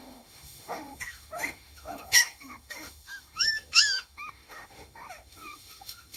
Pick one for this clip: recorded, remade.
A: remade